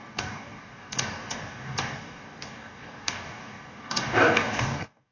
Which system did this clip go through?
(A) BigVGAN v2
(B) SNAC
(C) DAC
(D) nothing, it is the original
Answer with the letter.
C